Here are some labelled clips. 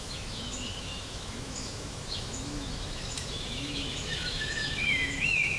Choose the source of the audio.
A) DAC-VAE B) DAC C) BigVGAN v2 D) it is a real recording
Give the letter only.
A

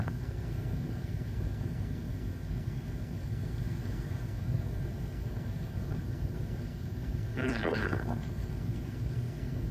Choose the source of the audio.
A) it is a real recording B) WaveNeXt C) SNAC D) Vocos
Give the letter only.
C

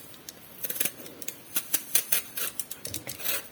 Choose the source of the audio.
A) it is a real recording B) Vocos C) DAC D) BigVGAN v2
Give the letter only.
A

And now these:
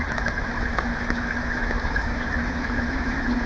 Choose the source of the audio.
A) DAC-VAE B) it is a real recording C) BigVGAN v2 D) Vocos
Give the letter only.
A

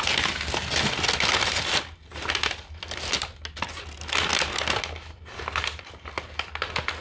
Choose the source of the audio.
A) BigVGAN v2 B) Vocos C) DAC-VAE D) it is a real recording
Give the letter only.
D